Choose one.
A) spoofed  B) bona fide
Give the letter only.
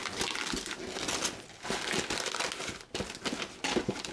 B